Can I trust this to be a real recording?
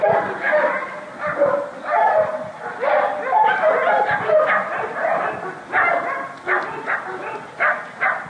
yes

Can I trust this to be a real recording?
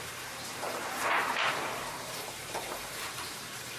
no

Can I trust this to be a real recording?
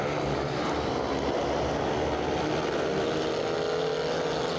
yes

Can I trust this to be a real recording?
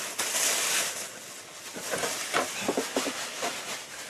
yes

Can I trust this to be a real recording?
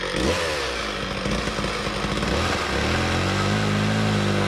yes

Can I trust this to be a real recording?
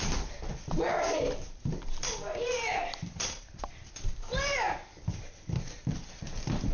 no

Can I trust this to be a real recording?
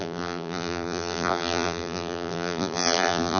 no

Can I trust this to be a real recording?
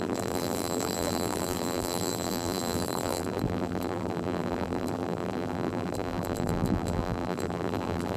no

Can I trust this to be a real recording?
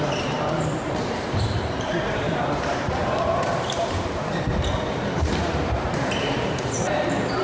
no